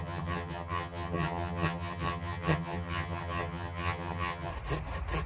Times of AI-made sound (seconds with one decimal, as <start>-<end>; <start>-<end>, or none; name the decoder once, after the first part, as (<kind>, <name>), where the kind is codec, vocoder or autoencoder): 0.0-4.5 (vocoder, HiFi-GAN)